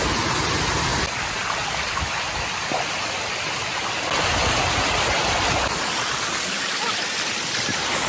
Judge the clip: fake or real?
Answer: real